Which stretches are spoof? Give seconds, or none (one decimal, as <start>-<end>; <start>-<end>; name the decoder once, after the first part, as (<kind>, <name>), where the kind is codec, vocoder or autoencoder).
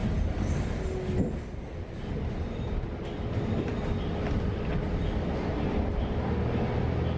none